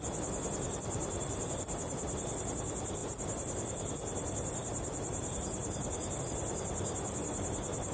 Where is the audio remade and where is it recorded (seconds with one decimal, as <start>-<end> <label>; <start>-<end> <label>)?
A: 0.0-7.9 recorded